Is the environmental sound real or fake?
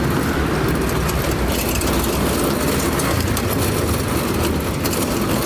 real